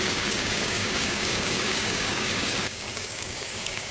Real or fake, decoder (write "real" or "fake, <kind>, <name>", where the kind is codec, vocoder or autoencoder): fake, codec, DAC